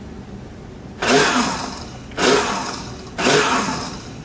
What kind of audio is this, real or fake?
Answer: real